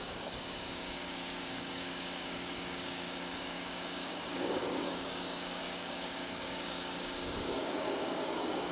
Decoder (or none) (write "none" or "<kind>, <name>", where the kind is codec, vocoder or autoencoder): codec, DAC